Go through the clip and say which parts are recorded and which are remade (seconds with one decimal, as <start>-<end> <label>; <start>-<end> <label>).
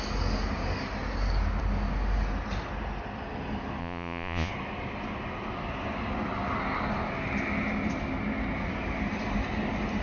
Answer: 0.0-3.8 recorded; 3.8-4.5 remade; 4.5-10.0 recorded